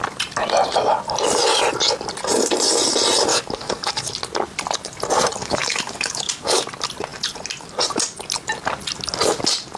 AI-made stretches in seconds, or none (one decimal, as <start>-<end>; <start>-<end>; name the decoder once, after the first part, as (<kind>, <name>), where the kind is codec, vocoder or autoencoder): 3.3-4.1 (codec, DAC); 5.4-6.6